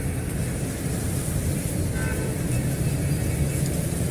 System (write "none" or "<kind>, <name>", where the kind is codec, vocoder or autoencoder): none